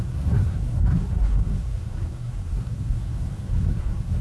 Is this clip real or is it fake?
fake